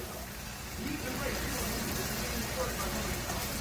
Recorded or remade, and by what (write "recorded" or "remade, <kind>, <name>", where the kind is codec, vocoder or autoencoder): recorded